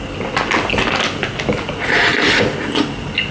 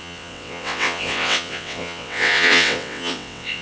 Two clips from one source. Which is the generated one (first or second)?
second